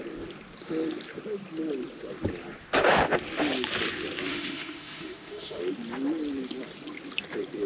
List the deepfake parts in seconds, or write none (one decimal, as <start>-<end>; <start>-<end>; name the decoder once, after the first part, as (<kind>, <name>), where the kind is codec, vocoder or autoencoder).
4.3-5.6 (autoencoder, DAC-VAE)